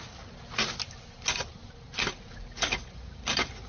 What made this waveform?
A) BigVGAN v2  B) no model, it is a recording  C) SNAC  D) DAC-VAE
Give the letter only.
B